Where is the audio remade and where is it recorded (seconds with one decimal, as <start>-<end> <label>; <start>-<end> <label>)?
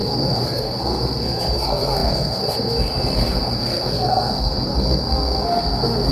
0.0-6.1 remade